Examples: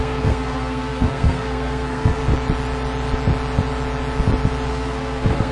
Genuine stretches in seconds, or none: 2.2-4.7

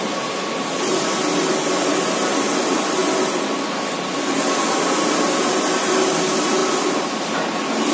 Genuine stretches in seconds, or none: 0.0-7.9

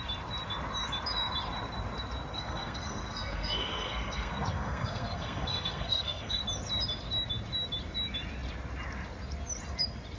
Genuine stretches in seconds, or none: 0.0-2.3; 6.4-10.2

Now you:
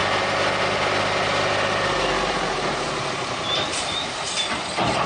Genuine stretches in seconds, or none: 0.0-5.1

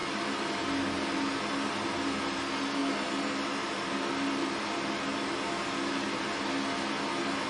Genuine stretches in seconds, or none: 0.0-7.5

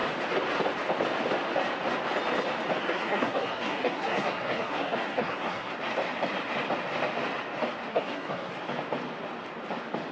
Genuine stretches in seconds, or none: 0.0-2.8; 5.7-7.9; 8.5-10.1

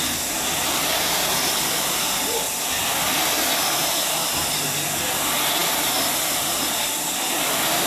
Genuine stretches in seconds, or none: 0.0-7.9